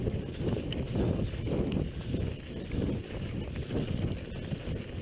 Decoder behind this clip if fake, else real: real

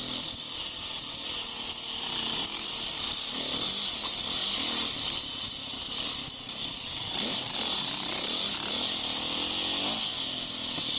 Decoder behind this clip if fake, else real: real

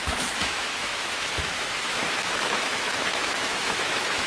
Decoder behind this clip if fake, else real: fake, autoencoder, DAC-VAE